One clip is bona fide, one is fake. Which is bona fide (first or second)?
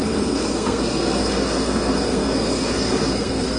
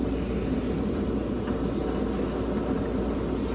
second